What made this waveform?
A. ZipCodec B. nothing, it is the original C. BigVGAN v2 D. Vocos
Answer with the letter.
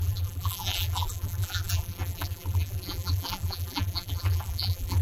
C